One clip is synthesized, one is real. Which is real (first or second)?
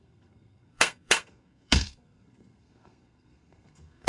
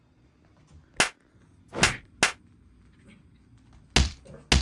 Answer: second